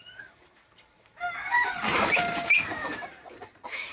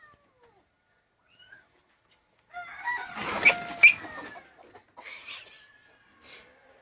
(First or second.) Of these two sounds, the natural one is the second